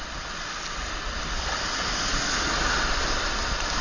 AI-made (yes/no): no